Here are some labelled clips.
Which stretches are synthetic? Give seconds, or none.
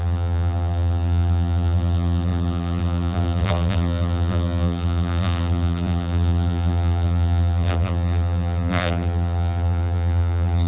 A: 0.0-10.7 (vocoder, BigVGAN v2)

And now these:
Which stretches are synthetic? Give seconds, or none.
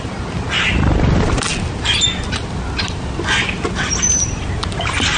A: none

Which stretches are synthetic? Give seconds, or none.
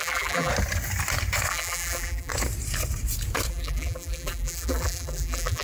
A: 0.0-0.5 (vocoder, BigVGAN v2); 1.5-2.3; 3.5-5.6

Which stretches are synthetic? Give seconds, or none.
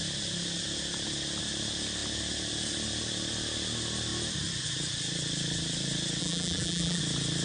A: 6.2-7.0 (vocoder, BigVGAN v2)